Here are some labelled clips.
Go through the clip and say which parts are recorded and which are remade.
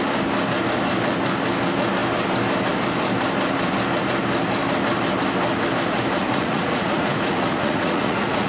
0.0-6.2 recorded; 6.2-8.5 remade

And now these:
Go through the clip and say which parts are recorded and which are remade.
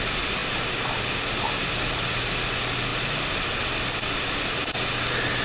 0.0-5.4 recorded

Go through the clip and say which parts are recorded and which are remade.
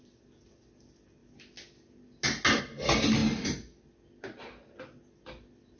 0.0-5.8 recorded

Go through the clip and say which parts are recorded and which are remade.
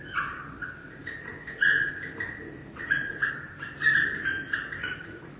0.0-0.8 recorded; 0.8-1.9 remade; 1.9-2.6 recorded; 2.6-3.3 remade; 3.3-4.8 recorded; 4.8-5.4 remade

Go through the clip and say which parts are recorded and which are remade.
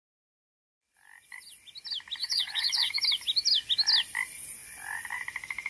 0.0-2.2 recorded; 2.2-3.0 remade; 3.0-5.7 recorded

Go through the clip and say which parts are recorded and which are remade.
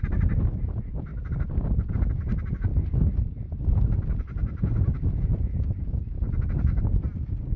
0.0-4.4 recorded; 4.4-6.0 remade; 6.0-7.6 recorded